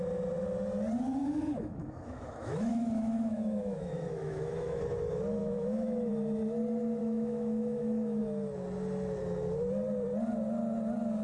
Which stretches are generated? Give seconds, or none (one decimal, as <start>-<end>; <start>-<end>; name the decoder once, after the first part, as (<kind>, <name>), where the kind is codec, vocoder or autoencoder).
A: 1.2-4.8 (autoencoder, DAC-VAE); 5.4-6.1; 7.0-8.2